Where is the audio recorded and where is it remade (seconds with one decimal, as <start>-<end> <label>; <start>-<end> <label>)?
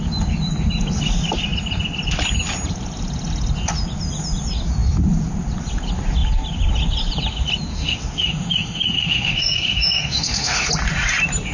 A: 0.0-7.7 recorded; 7.7-10.7 remade; 10.7-11.5 recorded